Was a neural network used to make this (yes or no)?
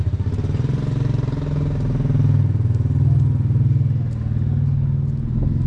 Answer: no